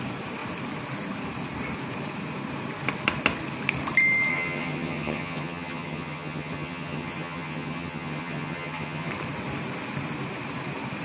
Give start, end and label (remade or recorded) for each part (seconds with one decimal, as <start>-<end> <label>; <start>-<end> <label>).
0.0-4.3 recorded; 4.3-9.1 remade; 9.1-11.0 recorded